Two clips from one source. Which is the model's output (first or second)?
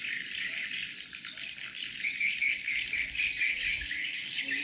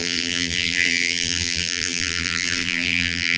second